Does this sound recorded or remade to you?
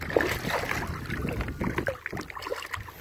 recorded